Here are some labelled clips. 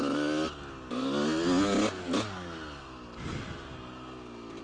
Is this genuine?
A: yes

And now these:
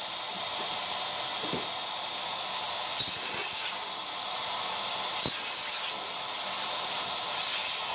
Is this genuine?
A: yes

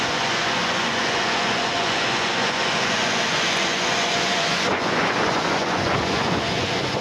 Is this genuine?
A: no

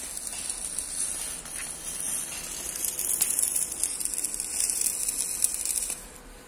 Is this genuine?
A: yes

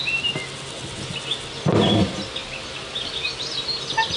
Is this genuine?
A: yes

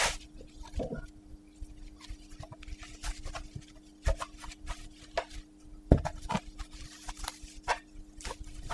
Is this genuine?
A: yes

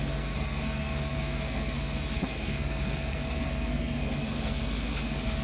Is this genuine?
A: no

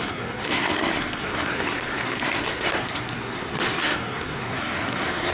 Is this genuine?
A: no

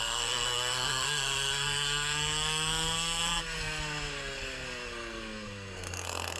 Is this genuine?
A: no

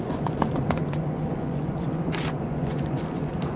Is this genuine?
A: no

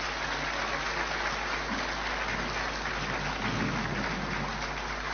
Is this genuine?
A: yes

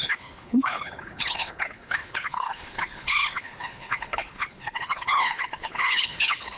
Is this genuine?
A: no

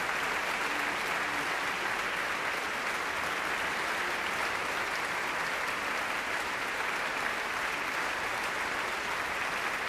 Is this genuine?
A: yes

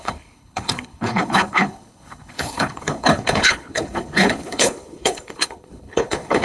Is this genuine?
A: no